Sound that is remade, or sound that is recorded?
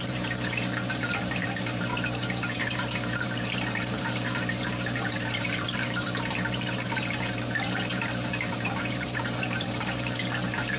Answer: remade